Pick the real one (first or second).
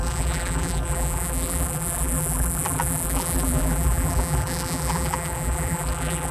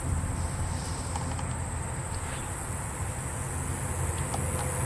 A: second